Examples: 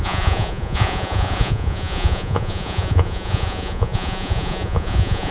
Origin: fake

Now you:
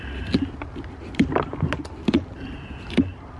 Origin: real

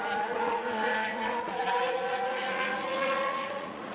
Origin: fake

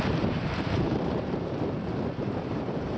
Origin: fake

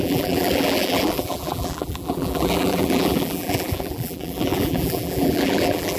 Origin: fake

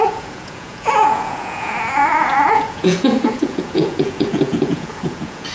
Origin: fake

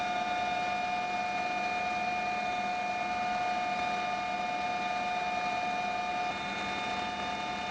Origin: real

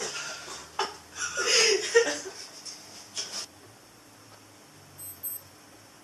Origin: real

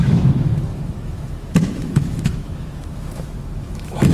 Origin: fake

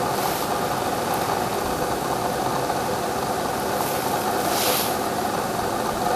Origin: real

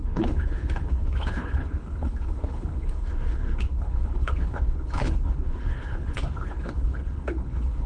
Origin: fake